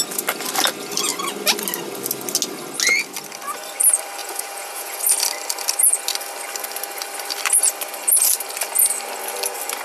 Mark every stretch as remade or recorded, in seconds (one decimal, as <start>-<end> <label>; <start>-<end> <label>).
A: 0.0-4.2 recorded; 4.2-5.0 remade; 5.0-9.8 recorded